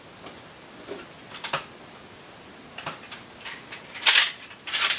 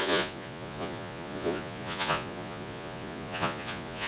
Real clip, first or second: first